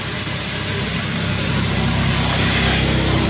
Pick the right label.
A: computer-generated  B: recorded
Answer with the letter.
B